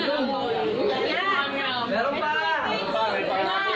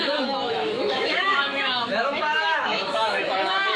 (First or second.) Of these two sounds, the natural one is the first